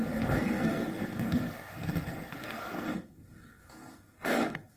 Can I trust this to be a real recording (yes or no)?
no